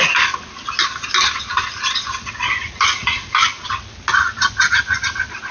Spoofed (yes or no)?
no